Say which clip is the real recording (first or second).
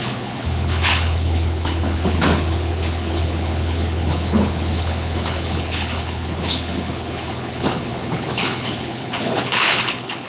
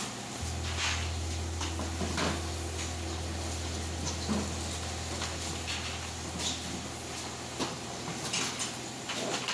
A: second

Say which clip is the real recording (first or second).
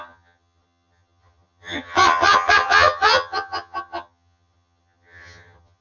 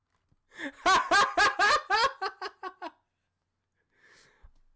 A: second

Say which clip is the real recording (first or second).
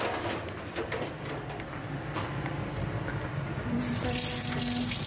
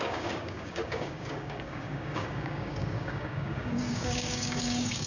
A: first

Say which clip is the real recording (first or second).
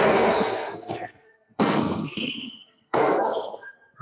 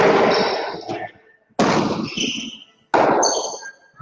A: second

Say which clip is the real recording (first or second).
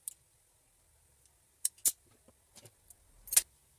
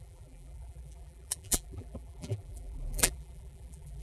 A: first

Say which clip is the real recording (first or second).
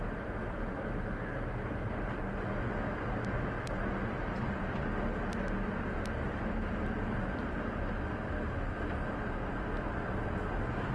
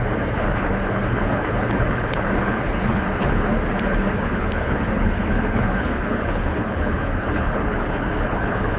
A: first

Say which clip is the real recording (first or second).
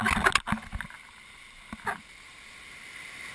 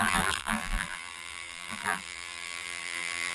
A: first